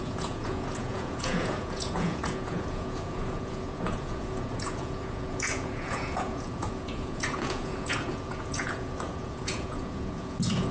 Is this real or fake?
fake